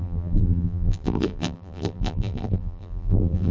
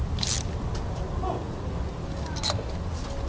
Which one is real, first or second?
second